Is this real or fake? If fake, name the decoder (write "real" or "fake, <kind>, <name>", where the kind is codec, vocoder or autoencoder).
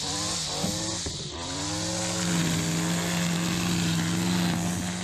real